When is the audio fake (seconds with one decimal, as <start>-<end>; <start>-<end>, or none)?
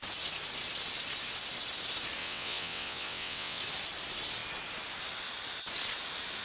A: 2.2-3.6